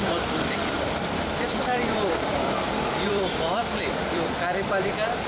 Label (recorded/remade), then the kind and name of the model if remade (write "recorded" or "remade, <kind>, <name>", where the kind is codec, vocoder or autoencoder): remade, vocoder, BigVGAN v2